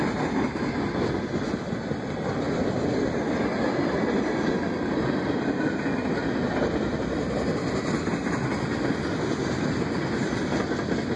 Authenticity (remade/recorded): recorded